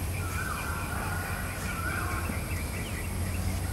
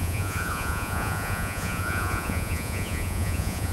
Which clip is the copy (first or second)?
second